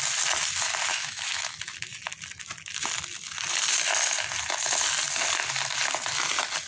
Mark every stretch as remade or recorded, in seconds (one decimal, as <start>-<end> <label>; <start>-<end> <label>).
0.0-0.9 recorded; 0.9-1.5 remade; 1.5-6.7 recorded